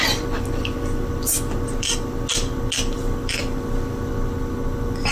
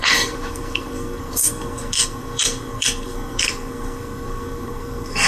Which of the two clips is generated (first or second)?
second